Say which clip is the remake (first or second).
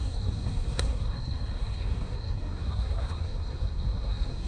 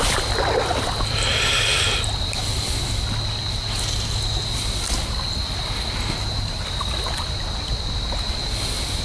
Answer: first